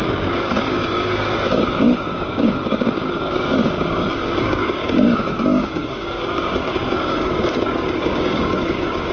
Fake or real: fake